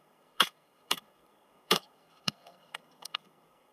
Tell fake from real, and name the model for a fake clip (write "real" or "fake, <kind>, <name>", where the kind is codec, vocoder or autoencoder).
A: fake, codec, SNAC